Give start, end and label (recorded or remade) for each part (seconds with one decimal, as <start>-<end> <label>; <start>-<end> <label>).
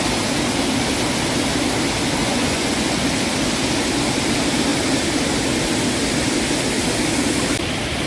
0.0-2.2 recorded; 2.2-3.1 remade; 3.1-8.1 recorded